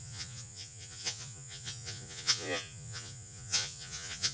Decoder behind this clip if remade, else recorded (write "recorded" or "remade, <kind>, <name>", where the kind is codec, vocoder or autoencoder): remade, vocoder, Vocos